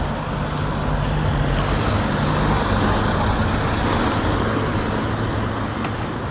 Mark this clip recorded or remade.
recorded